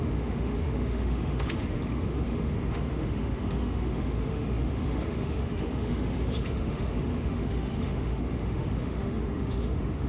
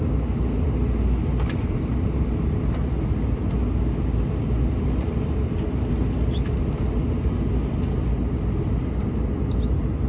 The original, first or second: second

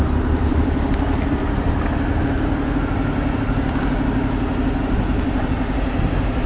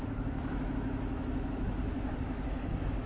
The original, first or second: first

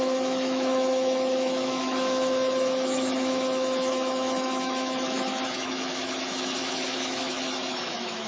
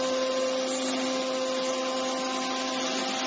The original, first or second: second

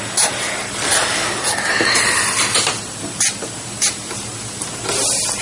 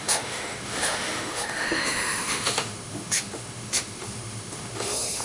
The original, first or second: first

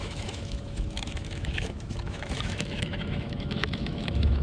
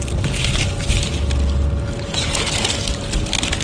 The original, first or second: second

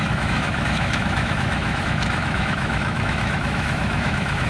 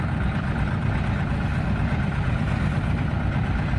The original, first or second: second